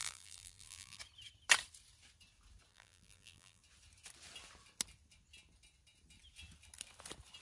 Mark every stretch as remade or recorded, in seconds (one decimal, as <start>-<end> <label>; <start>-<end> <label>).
0.0-1.0 remade; 1.0-2.7 recorded; 2.7-3.6 remade; 3.6-7.4 recorded